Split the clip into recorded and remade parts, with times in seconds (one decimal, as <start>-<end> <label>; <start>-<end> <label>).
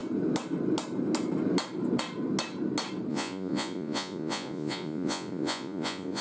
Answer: 0.0-3.1 recorded; 3.1-6.2 remade